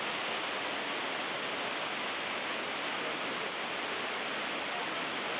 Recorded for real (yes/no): yes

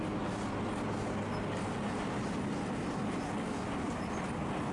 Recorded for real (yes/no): yes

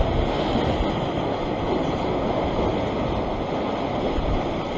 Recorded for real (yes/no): yes